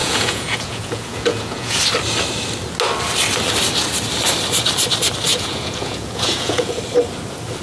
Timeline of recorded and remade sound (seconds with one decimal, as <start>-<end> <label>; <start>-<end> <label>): 0.0-1.8 remade; 1.8-5.3 recorded; 5.3-6.8 remade; 6.8-7.6 recorded